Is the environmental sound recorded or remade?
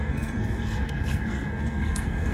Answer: remade